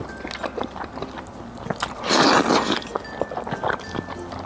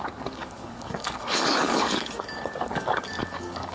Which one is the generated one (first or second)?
second